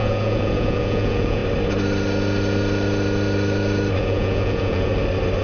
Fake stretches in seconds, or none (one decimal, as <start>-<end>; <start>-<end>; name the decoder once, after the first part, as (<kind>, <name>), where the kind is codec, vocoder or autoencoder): 0.0-1.4 (vocoder, Vocos); 4.0-4.9